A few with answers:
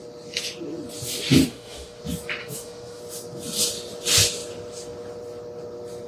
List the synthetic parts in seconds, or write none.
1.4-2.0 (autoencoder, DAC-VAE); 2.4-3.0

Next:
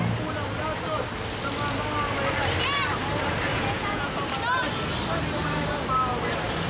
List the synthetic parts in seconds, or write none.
3.5-4.1 (vocoder, Vocos)

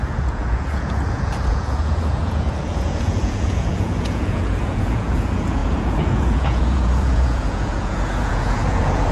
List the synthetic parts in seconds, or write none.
0.0-9.1 (vocoder, Vocos)

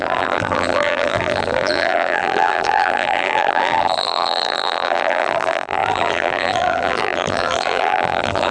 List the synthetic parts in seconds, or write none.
0.0-8.5 (vocoder, BigVGAN v2)

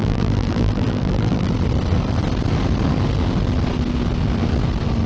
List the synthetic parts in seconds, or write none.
0.0-1.5 (vocoder, BigVGAN v2)